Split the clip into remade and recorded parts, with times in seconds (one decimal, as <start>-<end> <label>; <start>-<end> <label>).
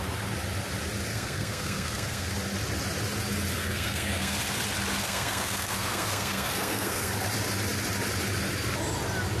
0.0-1.1 recorded; 1.1-2.3 remade; 2.3-3.6 recorded; 3.6-4.4 remade; 4.4-5.0 recorded; 5.0-7.1 remade; 7.1-9.4 recorded